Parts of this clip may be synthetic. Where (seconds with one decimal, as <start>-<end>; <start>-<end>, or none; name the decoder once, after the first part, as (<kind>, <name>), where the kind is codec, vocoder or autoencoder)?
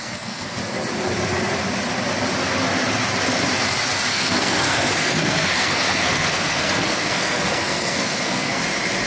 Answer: 0.0-0.6 (codec, SNAC); 4.1-8.6